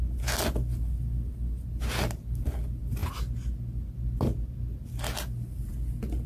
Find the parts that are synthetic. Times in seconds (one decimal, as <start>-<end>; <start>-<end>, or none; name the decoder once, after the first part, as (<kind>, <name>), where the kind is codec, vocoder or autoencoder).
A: none